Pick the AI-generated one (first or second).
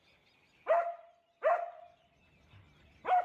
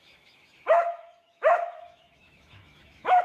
second